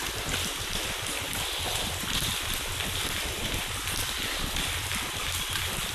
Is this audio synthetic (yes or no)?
no